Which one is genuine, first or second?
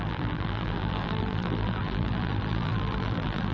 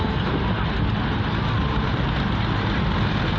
second